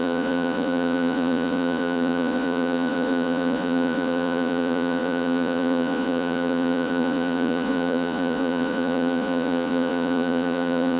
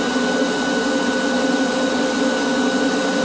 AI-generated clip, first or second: first